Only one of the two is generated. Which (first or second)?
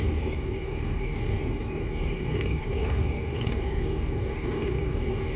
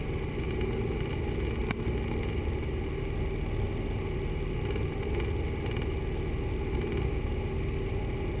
first